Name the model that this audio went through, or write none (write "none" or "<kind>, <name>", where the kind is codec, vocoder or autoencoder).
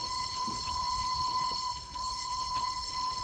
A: codec, HILCodec